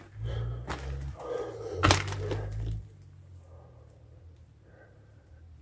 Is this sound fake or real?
real